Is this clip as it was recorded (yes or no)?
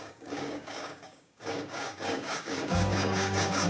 no